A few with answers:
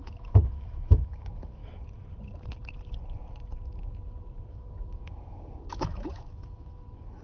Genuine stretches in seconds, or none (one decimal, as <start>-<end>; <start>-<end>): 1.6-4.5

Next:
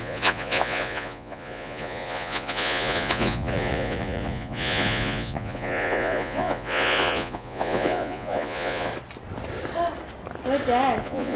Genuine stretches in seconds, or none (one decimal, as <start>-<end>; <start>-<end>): 8.9-11.0

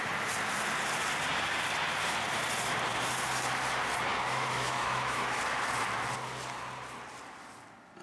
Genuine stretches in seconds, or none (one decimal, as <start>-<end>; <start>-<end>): 0.0-4.1; 5.4-8.0

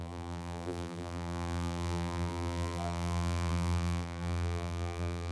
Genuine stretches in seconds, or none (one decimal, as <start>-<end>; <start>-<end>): none

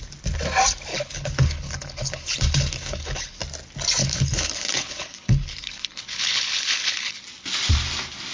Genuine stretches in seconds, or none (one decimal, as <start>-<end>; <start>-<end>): 0.0-0.9; 3.4-4.0; 7.2-8.3

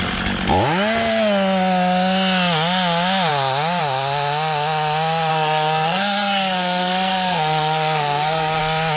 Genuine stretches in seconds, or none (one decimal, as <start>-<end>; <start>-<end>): 0.0-5.3; 8.6-9.0